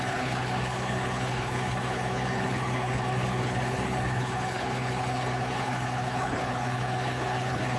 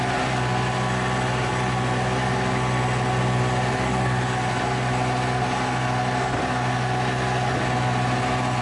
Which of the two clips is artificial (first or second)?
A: first